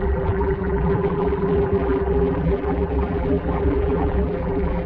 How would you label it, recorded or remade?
remade